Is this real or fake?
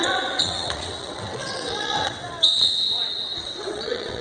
fake